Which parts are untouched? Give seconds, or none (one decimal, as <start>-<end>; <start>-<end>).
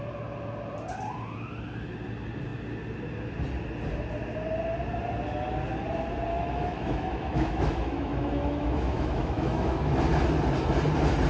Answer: 0.0-6.3; 10.0-11.3